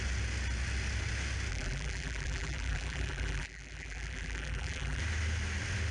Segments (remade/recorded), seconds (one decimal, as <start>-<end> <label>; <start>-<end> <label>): 0.0-1.5 recorded; 1.5-5.0 remade; 5.0-5.9 recorded